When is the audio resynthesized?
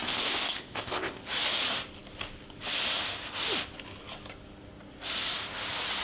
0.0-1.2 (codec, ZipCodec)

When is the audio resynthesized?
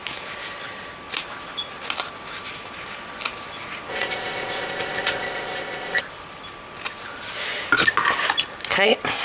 3.9-6.0 (codec, ZipCodec)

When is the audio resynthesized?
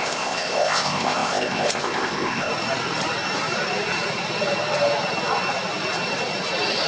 0.0-2.5 (codec, ZipCodec)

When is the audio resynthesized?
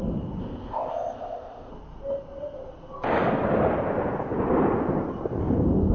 0.4-1.7 (codec, ZipCodec)